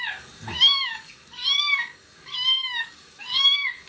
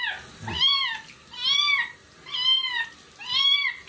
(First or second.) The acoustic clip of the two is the second